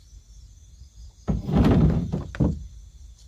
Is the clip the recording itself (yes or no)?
no